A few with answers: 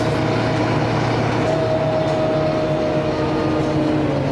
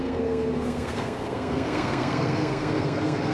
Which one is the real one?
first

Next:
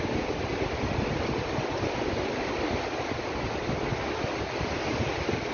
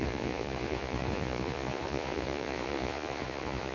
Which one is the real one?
first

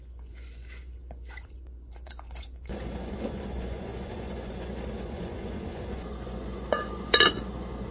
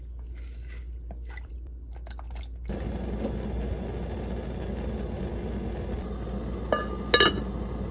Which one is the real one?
second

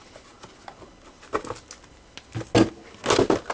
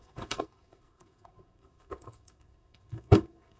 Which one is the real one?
first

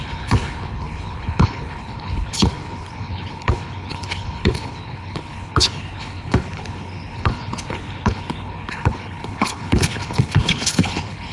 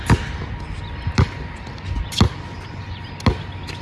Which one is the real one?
second